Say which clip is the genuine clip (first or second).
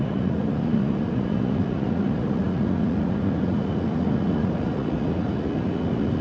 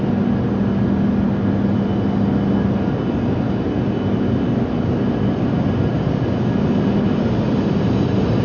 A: second